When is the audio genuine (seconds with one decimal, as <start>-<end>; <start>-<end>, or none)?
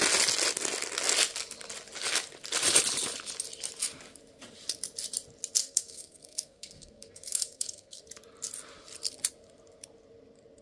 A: 0.0-5.6; 8.0-10.6